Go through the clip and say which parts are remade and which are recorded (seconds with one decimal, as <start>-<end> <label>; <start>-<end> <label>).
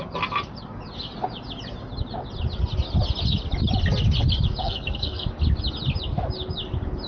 0.0-4.6 recorded; 4.6-5.3 remade; 5.3-7.1 recorded